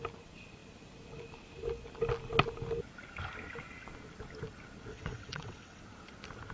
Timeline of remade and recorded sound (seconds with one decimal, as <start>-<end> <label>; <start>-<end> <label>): 0.0-4.9 recorded; 4.9-5.8 remade; 5.8-6.5 recorded